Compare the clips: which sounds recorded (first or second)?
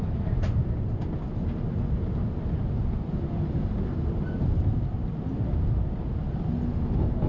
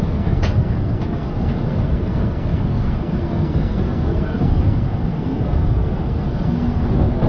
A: first